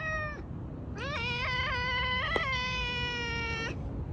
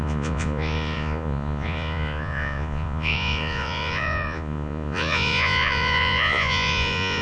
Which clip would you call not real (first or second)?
second